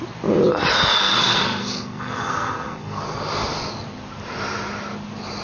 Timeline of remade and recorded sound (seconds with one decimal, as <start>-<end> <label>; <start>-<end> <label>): 0.0-1.0 recorded; 1.0-3.0 remade; 3.0-5.4 recorded